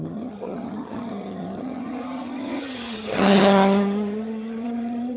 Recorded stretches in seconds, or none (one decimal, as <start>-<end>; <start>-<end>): none